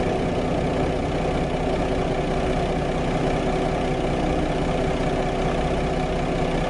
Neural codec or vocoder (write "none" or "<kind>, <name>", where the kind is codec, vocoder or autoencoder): none